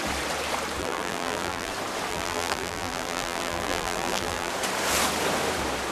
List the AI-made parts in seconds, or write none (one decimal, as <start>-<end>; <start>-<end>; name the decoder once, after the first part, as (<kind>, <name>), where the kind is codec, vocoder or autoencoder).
0.8-1.7 (vocoder, BigVGAN v2); 2.1-4.5